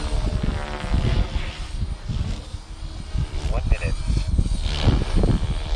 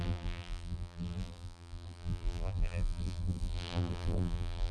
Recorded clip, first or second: first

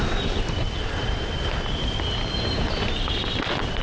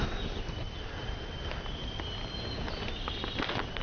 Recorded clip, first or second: second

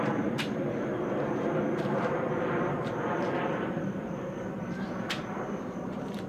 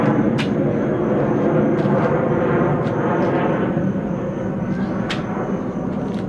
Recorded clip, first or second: second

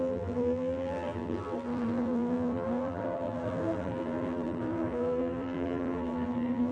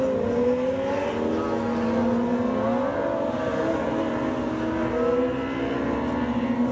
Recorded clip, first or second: second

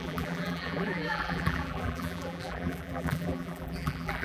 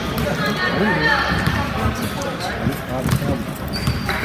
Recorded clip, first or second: second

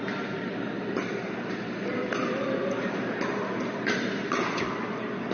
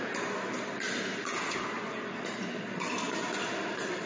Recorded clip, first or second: second